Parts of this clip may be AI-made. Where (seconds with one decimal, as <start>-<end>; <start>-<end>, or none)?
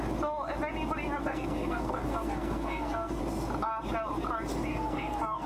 1.2-3.2; 4.7-5.5